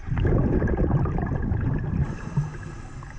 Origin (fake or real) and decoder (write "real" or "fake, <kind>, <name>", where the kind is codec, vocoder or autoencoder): real